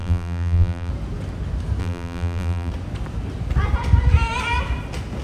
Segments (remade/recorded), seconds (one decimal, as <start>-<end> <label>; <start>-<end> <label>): 0.0-0.9 remade; 0.9-1.8 recorded; 1.8-2.7 remade; 2.7-5.2 recorded